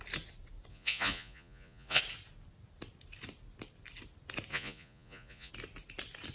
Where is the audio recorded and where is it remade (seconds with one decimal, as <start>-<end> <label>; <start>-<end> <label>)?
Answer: 0.0-0.7 recorded; 0.7-2.0 remade; 2.0-4.5 recorded; 4.5-5.5 remade; 5.5-6.3 recorded